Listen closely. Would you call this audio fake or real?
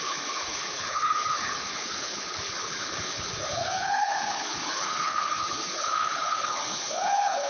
fake